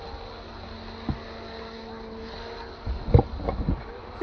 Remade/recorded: recorded